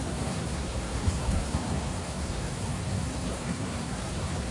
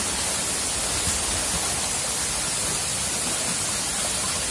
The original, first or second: second